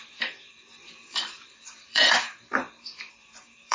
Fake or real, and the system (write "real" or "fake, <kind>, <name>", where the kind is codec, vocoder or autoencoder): fake, vocoder, BigVGAN v2